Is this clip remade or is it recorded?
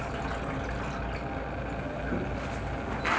recorded